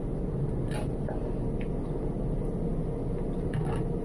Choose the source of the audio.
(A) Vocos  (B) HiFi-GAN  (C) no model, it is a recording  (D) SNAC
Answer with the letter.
C